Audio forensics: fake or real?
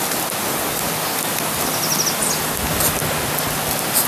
real